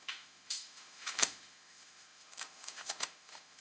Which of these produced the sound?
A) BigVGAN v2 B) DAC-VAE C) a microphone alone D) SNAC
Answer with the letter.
B